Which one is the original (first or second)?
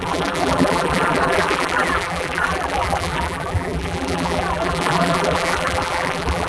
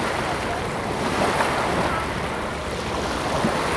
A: second